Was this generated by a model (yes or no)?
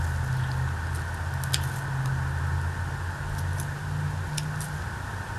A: no